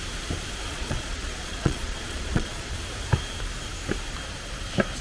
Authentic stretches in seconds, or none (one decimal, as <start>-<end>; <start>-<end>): 0.0-0.7; 2.8-5.0